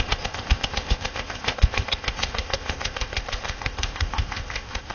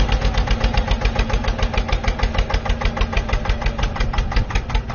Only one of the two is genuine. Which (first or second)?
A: second